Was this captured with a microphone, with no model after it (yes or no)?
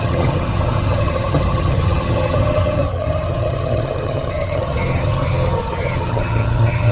no